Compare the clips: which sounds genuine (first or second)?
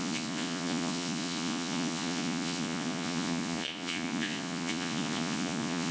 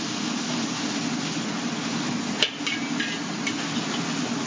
second